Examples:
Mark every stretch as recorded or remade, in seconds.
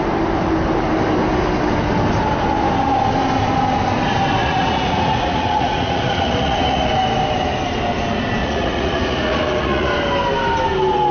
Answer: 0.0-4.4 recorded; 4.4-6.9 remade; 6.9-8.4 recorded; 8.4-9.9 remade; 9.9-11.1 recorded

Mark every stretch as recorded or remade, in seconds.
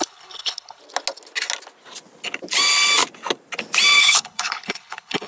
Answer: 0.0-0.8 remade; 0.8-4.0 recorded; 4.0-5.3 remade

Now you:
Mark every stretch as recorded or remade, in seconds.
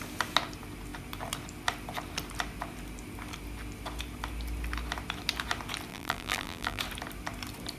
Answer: 0.0-5.9 recorded; 5.9-6.8 remade; 6.8-7.8 recorded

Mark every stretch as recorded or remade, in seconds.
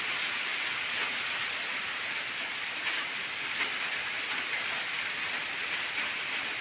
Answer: 0.0-1.7 recorded; 1.7-2.8 remade; 2.8-5.4 recorded; 5.4-6.6 remade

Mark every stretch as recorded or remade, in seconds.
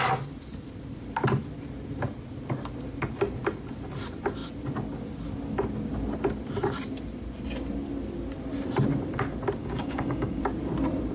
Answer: 0.0-9.6 recorded; 9.6-10.4 remade; 10.4-11.1 recorded